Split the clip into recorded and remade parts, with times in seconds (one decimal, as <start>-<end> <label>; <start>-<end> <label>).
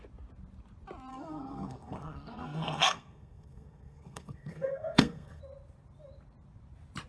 0.0-1.1 recorded; 1.1-5.4 remade; 5.4-7.1 recorded